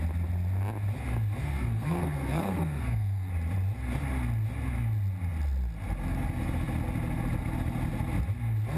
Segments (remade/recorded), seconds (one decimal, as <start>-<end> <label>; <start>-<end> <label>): 0.0-1.4 recorded; 1.4-3.3 remade; 3.3-8.8 recorded